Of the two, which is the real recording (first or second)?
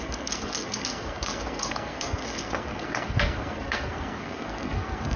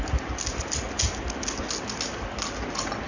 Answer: second